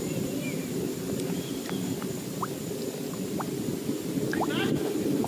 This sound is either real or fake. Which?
real